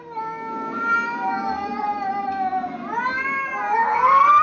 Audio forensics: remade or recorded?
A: recorded